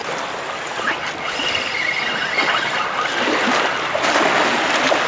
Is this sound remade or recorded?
recorded